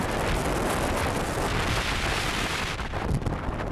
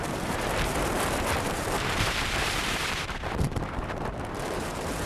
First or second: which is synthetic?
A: second